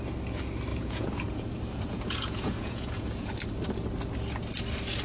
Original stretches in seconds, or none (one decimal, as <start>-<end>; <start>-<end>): 0.0-0.7; 1.4-1.9; 3.3-5.0